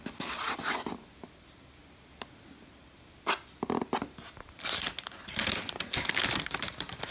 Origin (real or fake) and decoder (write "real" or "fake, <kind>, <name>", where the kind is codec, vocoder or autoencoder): real